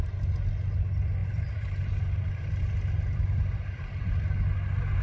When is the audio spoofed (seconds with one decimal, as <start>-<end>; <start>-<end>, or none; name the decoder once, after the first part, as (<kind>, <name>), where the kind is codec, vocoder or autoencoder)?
1.2-3.8 (vocoder, BigVGAN v2)